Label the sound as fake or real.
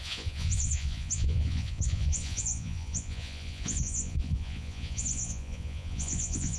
fake